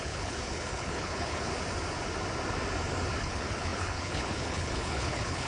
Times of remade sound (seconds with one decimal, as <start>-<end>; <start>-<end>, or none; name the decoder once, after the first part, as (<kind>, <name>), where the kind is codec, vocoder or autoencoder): 0.0-1.5 (codec, HILCodec); 3.2-5.5